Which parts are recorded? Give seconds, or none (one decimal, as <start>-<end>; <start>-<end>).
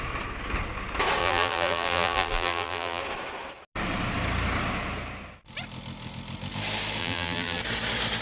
0.0-1.2; 3.0-7.0; 7.6-8.2